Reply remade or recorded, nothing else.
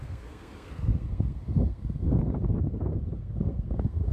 remade